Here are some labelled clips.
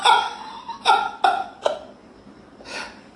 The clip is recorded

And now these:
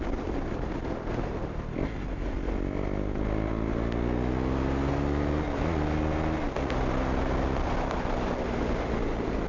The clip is recorded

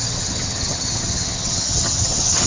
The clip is remade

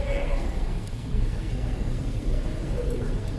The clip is remade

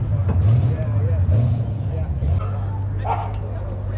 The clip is recorded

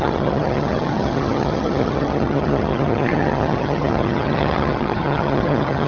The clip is remade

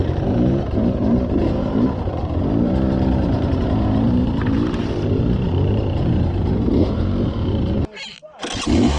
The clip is remade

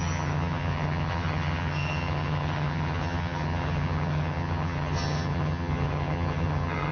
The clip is remade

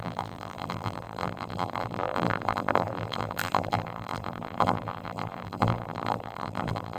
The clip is remade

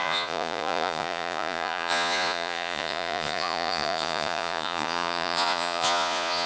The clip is remade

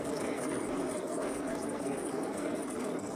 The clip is remade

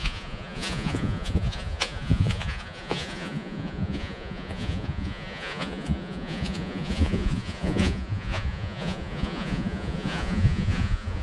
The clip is remade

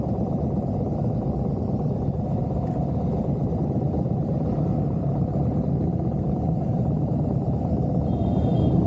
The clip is remade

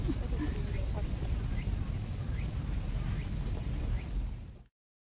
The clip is recorded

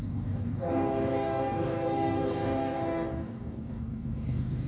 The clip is remade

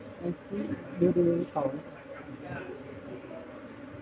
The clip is recorded